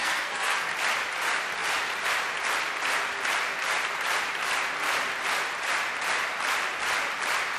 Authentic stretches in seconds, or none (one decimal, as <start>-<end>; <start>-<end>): 0.7-7.6